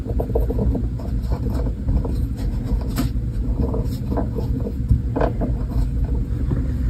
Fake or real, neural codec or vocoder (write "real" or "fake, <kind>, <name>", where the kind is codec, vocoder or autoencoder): real